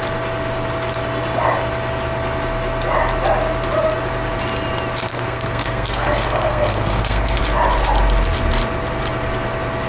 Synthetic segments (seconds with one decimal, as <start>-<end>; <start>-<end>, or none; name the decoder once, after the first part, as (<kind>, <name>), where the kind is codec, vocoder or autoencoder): 5.1-7.4 (codec, SNAC)